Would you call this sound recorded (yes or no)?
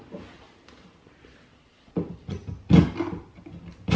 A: yes